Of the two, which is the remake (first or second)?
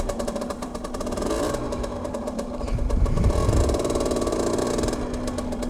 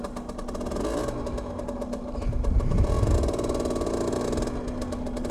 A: first